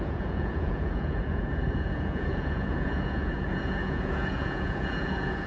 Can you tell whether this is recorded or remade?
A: remade